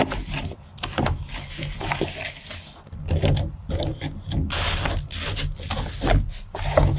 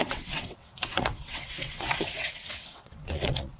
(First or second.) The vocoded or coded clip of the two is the second